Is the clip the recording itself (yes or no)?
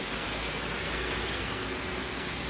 no